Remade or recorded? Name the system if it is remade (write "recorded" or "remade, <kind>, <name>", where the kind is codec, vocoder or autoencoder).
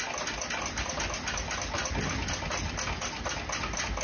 recorded